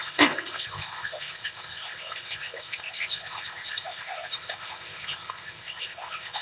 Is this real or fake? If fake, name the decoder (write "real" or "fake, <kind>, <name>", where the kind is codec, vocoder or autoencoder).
fake, codec, ZipCodec